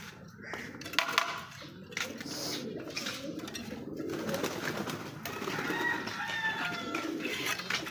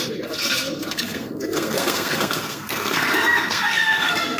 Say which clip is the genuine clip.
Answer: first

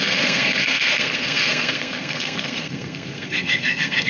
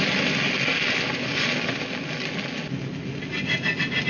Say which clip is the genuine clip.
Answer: second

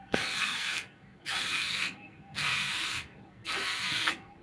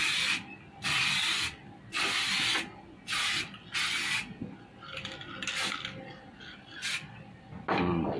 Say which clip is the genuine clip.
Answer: second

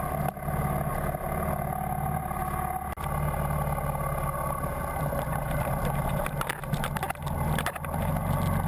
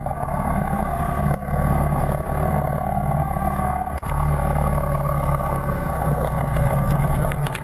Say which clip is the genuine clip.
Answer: first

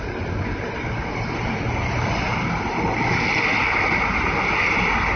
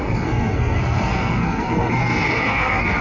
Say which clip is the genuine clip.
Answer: first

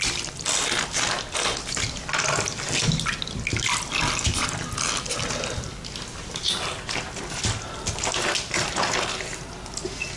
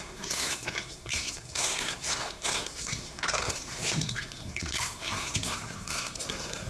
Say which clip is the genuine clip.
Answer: first